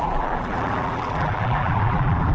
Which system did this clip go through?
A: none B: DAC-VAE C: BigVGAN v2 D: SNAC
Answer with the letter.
C